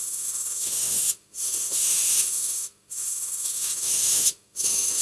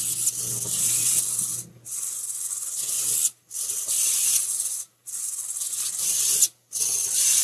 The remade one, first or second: first